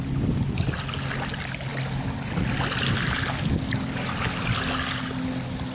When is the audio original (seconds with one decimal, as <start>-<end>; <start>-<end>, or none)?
0.0-5.7